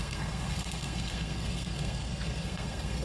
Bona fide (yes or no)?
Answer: no